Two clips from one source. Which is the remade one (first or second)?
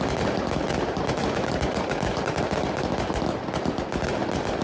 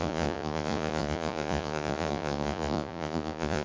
second